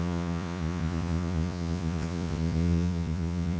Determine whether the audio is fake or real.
fake